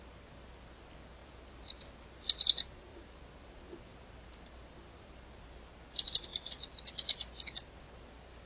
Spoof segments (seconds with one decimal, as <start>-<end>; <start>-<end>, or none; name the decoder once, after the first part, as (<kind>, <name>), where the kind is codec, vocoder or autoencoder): 1.2-1.7 (vocoder, BigVGAN v2); 2.9-5.3